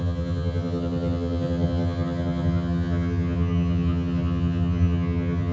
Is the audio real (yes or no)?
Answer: no